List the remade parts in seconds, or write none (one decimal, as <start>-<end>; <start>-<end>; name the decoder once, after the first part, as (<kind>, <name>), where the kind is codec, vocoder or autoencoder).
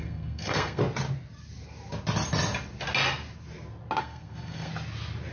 0.0-0.8 (codec, SNAC); 4.0-4.7